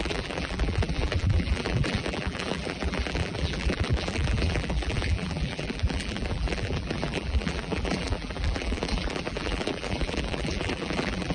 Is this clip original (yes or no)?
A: no